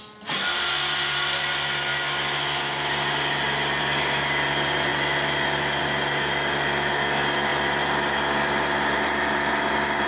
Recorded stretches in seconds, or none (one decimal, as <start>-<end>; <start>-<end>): 0.0-10.1